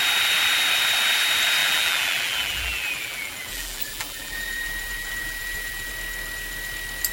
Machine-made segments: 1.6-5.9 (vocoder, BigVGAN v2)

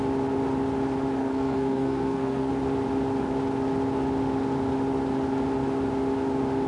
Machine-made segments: 1.2-2.5 (codec, SNAC)

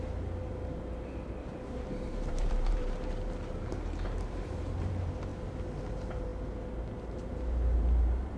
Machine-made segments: 0.0-5.3 (vocoder, BigVGAN v2); 5.8-8.4

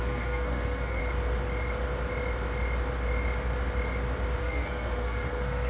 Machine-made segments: 0.0-1.0 (codec, SNAC); 4.4-5.7

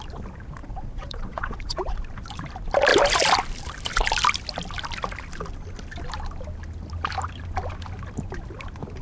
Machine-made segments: 0.6-2.0 (vocoder, Vocos)

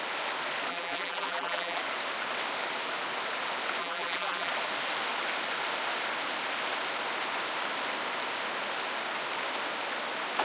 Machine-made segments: 0.7-1.8 (vocoder, BigVGAN v2); 3.8-4.5

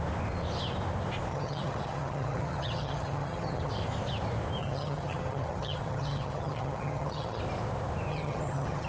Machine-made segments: 1.3-3.7 (vocoder, HiFi-GAN); 4.6-7.4; 8.1-8.9

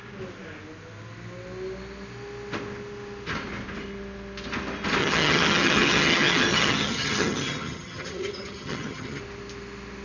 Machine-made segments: 5.0-9.2 (vocoder, HiFi-GAN)